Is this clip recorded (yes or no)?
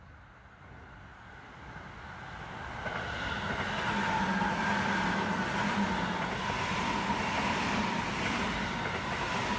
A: yes